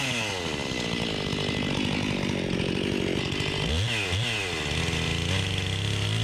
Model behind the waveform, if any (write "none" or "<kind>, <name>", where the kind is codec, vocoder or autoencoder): none